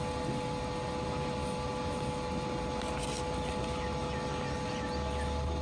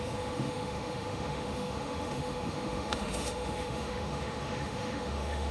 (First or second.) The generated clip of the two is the second